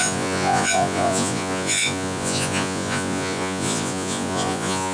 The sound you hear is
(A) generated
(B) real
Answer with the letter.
A